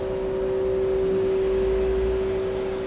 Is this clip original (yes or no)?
yes